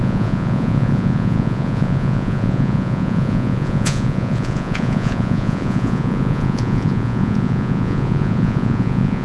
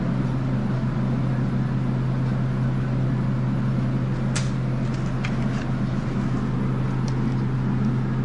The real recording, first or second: second